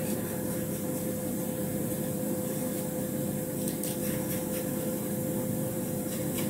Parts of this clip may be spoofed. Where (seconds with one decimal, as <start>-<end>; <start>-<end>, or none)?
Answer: 0.0-2.6; 5.4-6.5